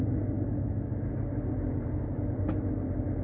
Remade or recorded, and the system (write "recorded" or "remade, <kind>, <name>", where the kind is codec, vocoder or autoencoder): recorded